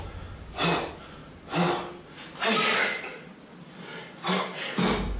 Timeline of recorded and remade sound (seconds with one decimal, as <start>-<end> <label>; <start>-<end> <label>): 0.0-5.2 recorded